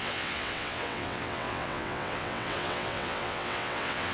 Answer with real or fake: fake